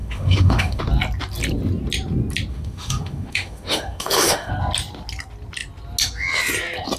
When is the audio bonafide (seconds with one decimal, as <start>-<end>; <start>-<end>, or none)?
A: 0.8-2.5; 4.5-7.0